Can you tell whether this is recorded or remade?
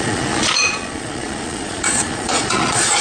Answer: remade